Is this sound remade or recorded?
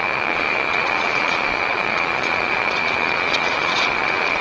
remade